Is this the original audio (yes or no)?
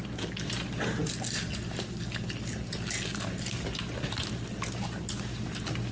yes